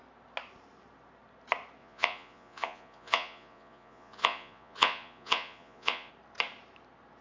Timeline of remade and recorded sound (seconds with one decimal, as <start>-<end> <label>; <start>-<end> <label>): 0.0-1.8 recorded; 1.8-6.1 remade; 6.1-7.2 recorded